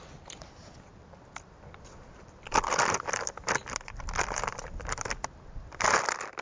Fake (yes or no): no